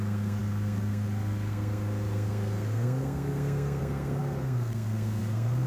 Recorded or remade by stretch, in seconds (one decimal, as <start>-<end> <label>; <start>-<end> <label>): 0.0-5.7 remade